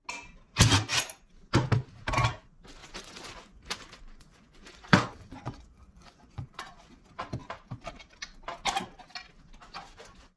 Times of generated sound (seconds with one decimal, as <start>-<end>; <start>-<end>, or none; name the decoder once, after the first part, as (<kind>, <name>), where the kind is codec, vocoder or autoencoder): 2.8-7.0 (vocoder, Vocos)

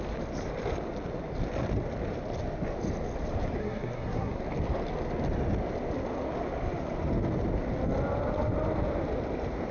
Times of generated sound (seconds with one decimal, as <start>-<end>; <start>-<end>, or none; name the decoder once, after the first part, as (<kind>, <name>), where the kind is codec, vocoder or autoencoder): 3.6-4.4 (codec, SNAC)

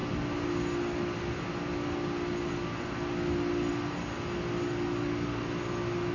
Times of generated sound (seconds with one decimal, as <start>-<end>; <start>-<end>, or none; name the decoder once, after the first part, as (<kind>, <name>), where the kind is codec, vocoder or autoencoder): none

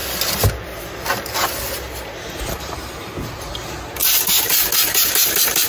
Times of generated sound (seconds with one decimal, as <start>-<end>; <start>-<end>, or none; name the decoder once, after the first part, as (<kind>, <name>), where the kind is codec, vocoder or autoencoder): 2.6-4.0 (vocoder, BigVGAN v2); 5.0-5.7

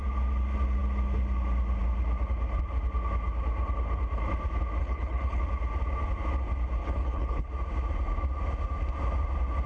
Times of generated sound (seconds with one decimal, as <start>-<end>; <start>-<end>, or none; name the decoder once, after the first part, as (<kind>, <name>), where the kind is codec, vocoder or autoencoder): 4.8-5.4 (codec, HILCodec); 6.8-7.5

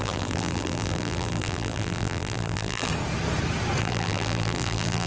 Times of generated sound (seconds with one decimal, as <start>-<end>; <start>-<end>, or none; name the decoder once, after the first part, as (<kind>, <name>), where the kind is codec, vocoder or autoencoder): 0.0-2.9 (vocoder, BigVGAN v2); 3.8-5.1

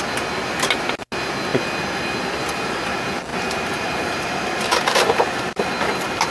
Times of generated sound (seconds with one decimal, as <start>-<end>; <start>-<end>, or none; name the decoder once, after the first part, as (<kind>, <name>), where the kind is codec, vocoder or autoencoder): 3.3-5.7 (vocoder, BigVGAN v2)